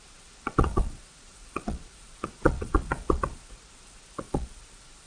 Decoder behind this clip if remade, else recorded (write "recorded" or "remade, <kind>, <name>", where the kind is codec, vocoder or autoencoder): remade, vocoder, Vocos